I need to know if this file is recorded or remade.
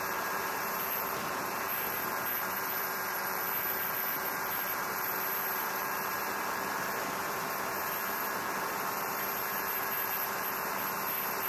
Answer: remade